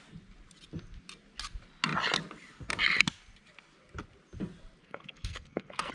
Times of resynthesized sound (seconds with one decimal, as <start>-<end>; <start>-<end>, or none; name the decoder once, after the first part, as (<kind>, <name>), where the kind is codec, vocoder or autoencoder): 4.8-5.9 (codec, SNAC)

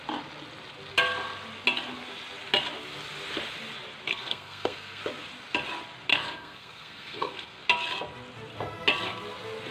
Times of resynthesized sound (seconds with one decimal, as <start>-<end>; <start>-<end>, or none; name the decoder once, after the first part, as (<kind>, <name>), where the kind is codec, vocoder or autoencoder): 4.1-5.0 (codec, SNAC); 6.1-7.6